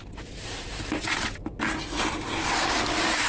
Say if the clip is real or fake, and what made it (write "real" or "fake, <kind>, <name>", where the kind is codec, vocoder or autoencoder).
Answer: real